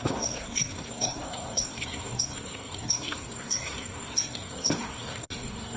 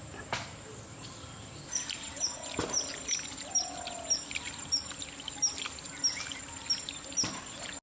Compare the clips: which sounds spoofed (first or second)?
first